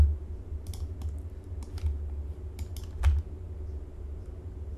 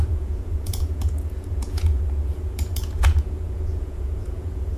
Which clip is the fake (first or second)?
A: second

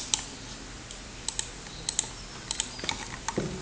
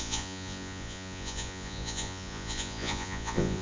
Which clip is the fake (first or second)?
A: second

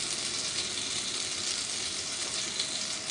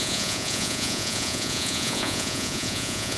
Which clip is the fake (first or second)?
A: second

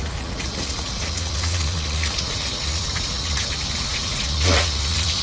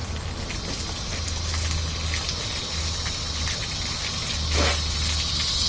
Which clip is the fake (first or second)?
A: first